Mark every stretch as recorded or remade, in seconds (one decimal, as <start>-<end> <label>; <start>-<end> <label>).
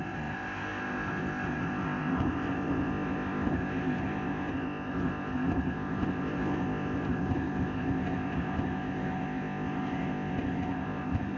0.0-11.4 remade